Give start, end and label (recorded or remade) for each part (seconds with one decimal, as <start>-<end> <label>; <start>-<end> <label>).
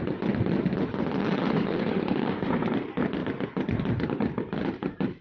0.0-1.2 recorded; 1.2-2.5 remade; 2.5-5.2 recorded